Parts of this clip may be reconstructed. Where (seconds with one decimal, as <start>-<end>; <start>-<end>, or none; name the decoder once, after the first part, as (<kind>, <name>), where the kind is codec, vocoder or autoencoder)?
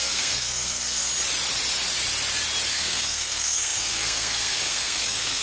0.0-1.1 (codec, SNAC); 2.7-5.4